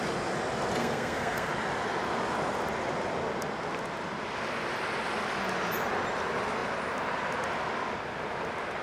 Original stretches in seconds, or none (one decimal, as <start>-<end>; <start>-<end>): 0.0-0.8; 1.5-8.8